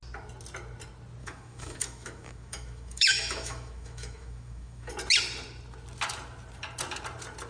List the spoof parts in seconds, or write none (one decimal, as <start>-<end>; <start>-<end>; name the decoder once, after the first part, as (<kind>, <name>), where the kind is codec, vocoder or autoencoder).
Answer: 1.2-4.9 (autoencoder, DAC-VAE)